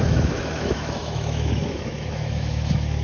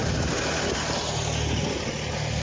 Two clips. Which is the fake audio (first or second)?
first